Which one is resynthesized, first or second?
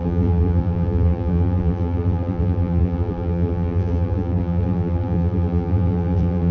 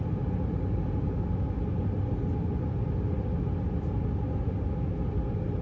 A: first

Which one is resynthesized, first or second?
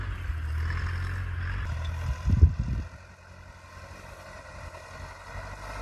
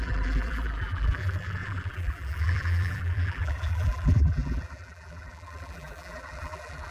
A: second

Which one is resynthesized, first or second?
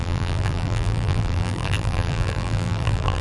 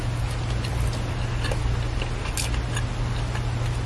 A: first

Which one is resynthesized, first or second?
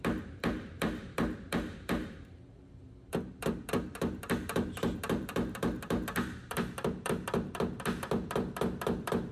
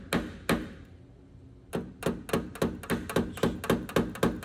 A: first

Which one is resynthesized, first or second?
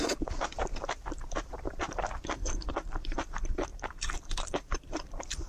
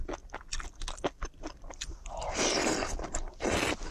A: first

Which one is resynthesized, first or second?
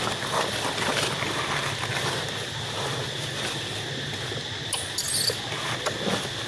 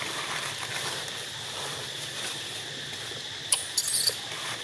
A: second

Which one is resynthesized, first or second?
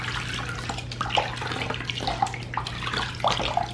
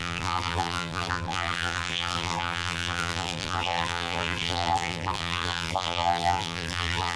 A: second